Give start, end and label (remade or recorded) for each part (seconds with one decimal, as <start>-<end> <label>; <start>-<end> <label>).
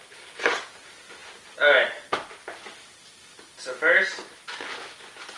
0.0-0.6 remade; 0.6-5.4 recorded